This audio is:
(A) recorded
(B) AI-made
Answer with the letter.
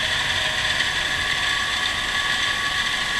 A